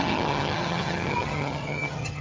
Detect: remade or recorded remade